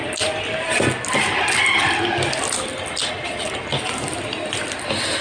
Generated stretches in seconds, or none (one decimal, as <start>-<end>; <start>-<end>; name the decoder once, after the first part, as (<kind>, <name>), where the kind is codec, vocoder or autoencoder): none